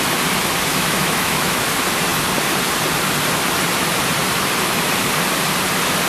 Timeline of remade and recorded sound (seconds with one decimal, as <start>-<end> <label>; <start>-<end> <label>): 0.0-0.7 recorded; 0.7-1.7 remade; 1.7-6.1 recorded